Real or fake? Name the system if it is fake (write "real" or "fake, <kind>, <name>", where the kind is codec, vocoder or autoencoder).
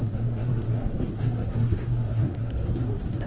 fake, codec, SNAC